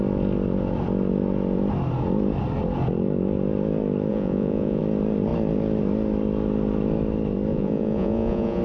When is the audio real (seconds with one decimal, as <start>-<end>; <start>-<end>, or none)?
0.0-4.1; 4.8-7.5